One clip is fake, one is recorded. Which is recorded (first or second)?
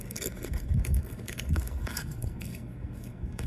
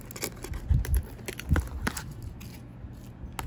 second